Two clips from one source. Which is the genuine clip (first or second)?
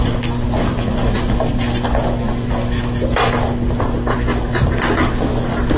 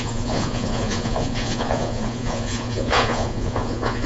first